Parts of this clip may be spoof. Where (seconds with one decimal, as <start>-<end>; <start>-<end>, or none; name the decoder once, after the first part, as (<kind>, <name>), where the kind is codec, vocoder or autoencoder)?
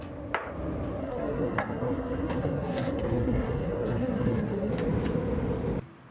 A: 1.0-4.7 (codec, SNAC)